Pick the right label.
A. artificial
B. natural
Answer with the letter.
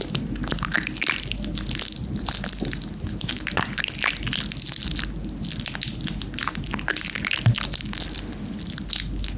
B